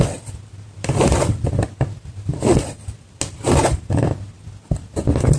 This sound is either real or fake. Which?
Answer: real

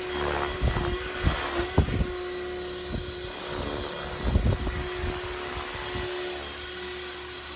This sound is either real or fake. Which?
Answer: real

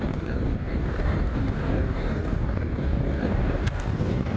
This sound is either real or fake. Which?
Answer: fake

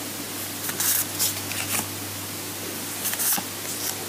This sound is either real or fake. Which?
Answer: real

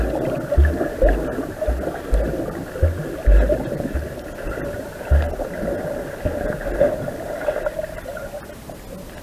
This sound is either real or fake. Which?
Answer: real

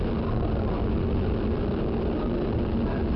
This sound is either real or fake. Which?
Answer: real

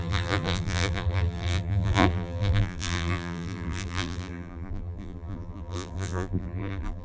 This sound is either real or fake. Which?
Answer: fake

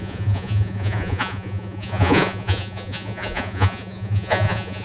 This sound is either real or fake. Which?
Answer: fake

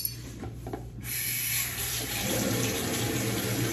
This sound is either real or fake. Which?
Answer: fake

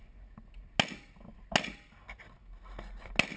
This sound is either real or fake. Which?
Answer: real